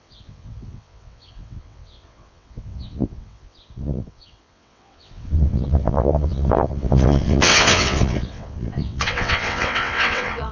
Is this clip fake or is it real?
fake